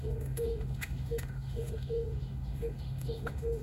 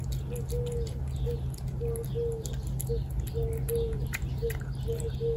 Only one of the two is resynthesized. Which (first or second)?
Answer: first